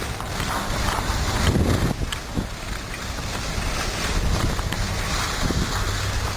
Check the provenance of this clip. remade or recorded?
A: recorded